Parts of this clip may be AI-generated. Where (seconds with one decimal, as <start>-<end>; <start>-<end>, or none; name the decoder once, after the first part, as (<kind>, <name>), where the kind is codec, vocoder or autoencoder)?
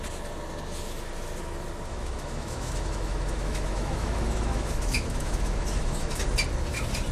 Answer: 1.9-6.2 (autoencoder, DAC-VAE)